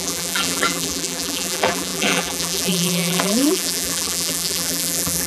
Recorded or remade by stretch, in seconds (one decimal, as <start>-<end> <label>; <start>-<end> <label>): 0.0-5.3 remade